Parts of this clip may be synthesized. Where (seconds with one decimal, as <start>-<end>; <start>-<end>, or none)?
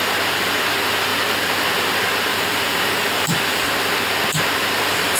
2.3-3.7